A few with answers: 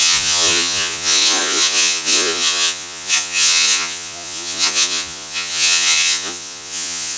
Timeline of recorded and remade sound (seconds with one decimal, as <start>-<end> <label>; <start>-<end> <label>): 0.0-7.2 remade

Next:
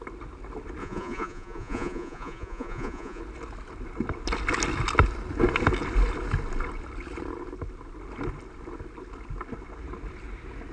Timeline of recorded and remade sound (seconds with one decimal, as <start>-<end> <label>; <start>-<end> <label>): 0.0-0.8 recorded; 0.8-3.2 remade; 3.2-10.7 recorded

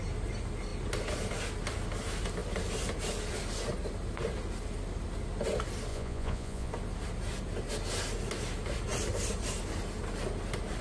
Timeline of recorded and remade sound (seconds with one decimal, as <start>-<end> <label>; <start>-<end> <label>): 0.0-5.9 recorded; 5.9-6.7 remade; 6.7-10.8 recorded